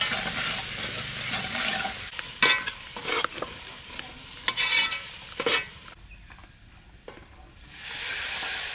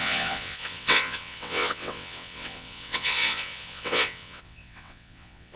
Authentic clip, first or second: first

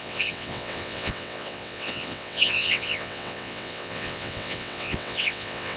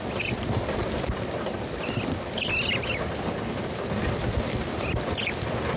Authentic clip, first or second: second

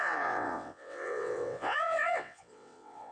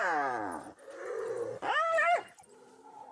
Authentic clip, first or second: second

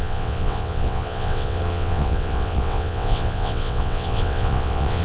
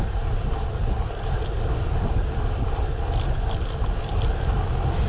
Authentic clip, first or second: second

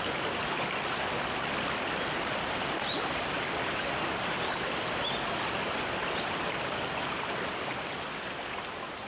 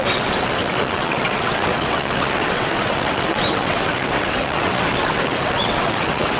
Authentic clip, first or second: first